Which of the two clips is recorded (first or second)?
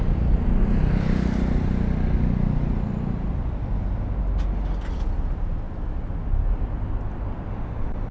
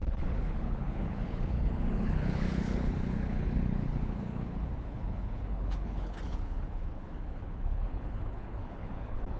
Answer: first